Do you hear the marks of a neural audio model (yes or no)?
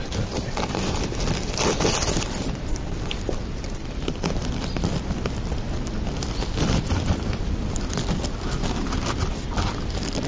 yes